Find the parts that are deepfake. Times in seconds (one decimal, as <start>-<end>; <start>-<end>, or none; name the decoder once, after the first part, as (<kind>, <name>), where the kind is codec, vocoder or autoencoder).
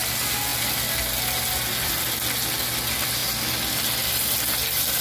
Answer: none